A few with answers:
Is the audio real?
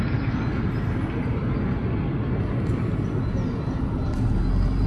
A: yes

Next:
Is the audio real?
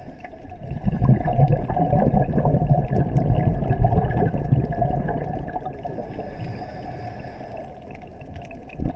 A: yes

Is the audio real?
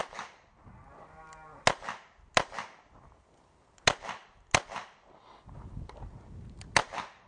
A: yes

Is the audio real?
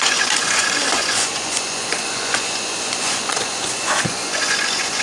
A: no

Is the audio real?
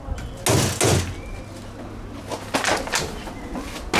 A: yes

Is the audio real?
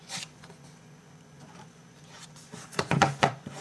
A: no